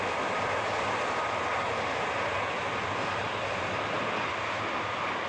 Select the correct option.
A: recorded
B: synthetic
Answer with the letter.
A